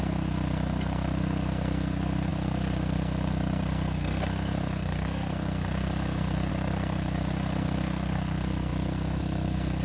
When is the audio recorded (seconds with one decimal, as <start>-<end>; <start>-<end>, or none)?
none